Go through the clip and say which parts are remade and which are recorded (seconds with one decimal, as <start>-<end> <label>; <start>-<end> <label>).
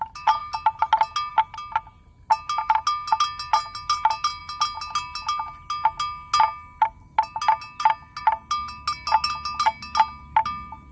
0.0-10.9 recorded